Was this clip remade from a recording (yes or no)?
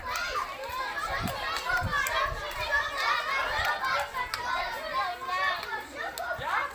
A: no